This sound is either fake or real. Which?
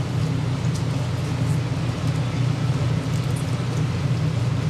real